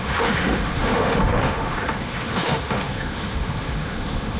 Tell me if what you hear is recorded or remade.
remade